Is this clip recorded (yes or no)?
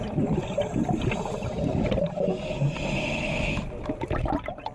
yes